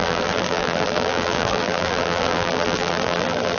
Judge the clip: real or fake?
fake